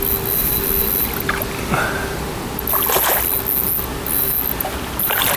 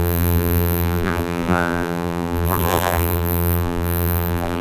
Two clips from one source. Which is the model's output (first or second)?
second